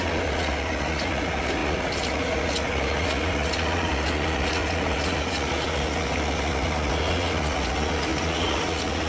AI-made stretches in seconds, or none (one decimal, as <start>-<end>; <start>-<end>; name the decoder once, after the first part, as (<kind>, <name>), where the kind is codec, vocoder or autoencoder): 0.0-9.1 (vocoder, Vocos)